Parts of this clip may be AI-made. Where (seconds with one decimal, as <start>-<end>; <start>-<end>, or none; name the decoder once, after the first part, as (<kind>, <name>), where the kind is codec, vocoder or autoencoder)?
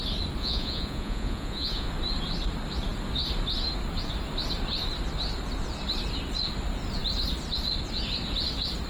0.4-1.9 (vocoder, Vocos)